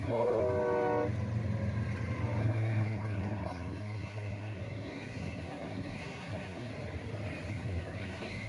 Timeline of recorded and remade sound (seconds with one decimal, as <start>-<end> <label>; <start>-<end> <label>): 0.0-0.4 remade; 0.4-2.4 recorded; 2.4-6.7 remade; 6.7-7.5 recorded; 7.5-8.5 remade